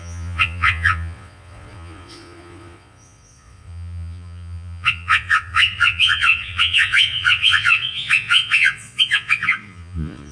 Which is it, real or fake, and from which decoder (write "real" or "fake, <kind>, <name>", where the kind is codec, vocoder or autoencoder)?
fake, vocoder, Vocos